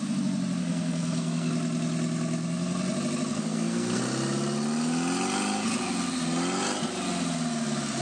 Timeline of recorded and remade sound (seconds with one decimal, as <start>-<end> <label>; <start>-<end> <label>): 0.0-0.6 recorded; 0.6-1.5 remade; 1.5-3.3 recorded; 3.3-4.0 remade; 4.0-8.0 recorded